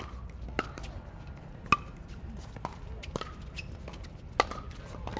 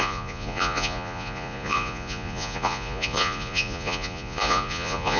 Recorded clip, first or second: first